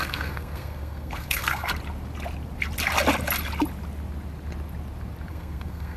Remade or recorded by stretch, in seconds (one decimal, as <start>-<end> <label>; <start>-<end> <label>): 0.0-1.7 remade; 1.7-5.3 recorded; 5.3-6.0 remade